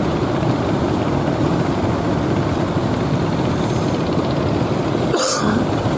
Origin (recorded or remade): remade